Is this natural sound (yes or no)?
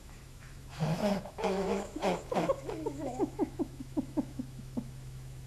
no